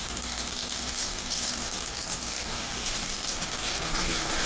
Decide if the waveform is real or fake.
fake